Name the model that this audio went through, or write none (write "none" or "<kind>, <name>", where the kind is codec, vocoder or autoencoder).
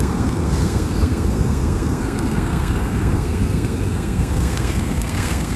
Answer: codec, SNAC